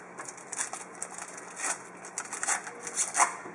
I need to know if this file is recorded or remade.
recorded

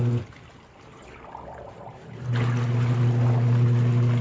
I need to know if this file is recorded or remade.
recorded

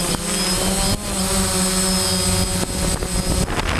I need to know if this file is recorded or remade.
recorded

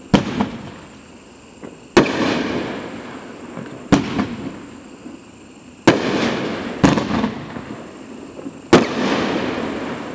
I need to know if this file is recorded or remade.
recorded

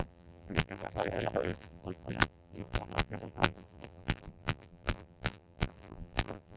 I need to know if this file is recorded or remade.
remade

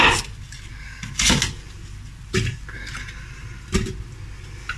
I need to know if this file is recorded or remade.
remade